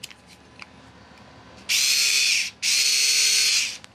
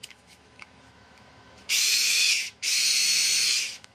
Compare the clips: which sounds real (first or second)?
first